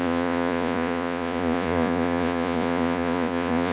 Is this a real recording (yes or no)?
no